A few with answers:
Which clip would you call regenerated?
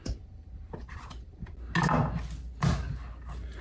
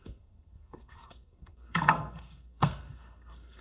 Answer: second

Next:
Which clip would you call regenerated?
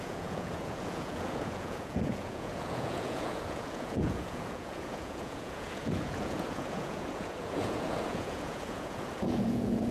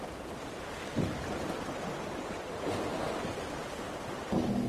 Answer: first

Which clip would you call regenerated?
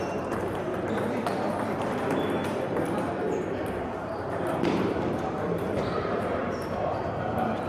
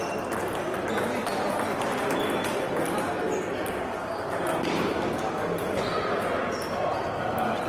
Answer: first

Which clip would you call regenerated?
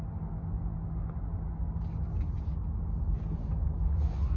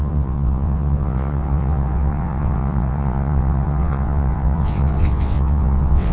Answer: second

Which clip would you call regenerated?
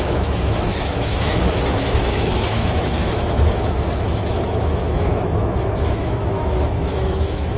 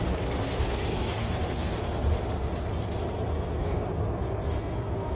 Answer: first